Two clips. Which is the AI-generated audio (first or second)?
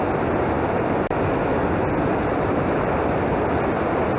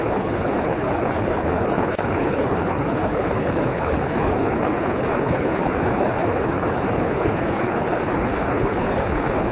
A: second